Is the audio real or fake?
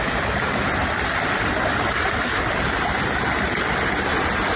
real